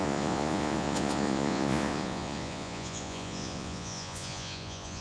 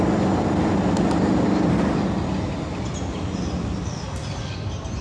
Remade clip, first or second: first